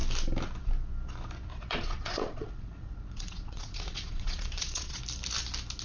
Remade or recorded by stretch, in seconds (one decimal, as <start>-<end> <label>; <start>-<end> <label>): 0.0-1.5 recorded; 1.5-5.0 remade; 5.0-5.8 recorded